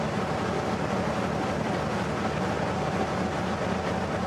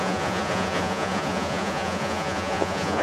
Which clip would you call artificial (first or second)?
second